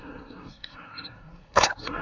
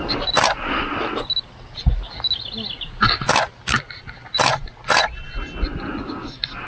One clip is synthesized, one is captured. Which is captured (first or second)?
second